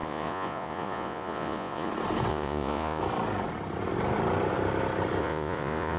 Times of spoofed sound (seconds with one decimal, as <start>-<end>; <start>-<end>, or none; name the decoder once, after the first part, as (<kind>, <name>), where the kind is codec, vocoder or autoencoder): 0.0-1.9 (vocoder, Vocos); 2.3-3.0; 5.2-6.0